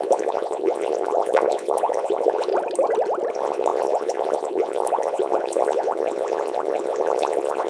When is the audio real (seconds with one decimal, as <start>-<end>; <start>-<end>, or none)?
2.5-3.3